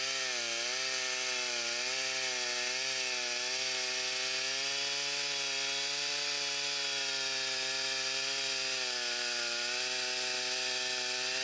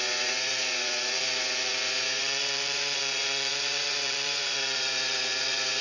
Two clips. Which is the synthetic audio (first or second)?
second